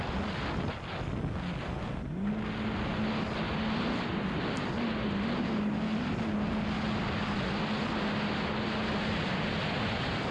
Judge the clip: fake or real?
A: real